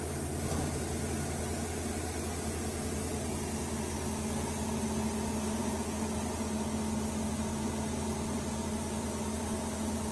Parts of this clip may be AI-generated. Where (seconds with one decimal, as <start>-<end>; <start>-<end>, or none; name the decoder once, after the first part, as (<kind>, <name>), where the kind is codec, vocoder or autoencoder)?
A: none

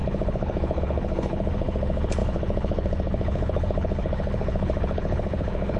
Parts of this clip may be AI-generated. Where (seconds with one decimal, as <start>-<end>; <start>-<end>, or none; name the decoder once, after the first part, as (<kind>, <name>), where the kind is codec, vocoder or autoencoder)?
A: 0.0-5.8 (codec, HILCodec)

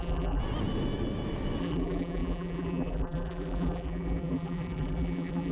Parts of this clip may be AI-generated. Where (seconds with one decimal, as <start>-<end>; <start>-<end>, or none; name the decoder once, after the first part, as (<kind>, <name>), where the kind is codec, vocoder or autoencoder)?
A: 0.0-0.4 (vocoder, BigVGAN v2); 1.6-5.5

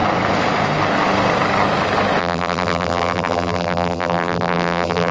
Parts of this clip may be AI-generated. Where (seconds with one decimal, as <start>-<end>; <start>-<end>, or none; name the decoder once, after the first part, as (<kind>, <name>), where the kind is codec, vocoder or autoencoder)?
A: 2.2-5.1 (vocoder, BigVGAN v2)

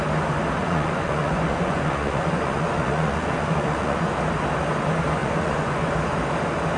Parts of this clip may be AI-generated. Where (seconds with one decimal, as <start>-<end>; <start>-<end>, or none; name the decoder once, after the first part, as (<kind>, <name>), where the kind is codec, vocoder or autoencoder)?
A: 0.6-4.1 (vocoder, Vocos); 5.2-5.9

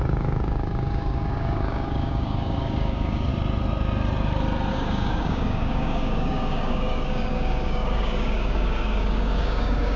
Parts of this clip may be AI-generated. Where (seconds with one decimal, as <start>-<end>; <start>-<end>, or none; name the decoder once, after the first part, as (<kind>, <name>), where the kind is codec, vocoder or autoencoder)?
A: 0.0-3.3 (codec, DAC); 4.7-10.0